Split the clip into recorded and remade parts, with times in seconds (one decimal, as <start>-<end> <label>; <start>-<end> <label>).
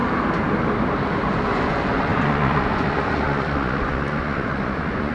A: 0.0-1.4 recorded; 1.4-5.1 remade